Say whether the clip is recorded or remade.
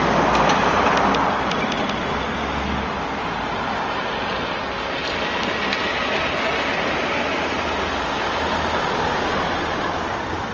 recorded